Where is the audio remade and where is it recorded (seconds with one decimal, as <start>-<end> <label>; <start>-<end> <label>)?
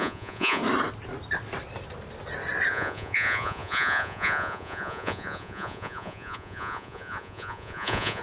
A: 0.0-0.6 remade; 0.6-2.7 recorded; 2.7-8.2 remade